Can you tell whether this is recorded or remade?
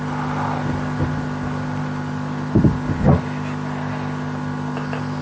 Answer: recorded